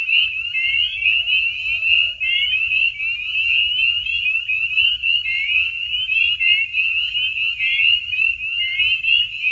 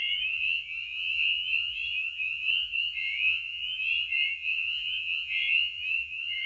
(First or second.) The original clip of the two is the first